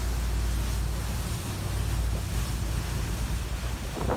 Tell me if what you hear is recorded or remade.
recorded